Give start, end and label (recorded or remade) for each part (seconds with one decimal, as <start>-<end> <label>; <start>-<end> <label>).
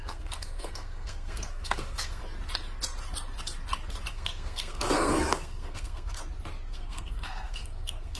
0.0-2.2 remade; 2.2-4.1 recorded; 4.1-6.2 remade; 6.2-6.7 recorded; 6.7-8.2 remade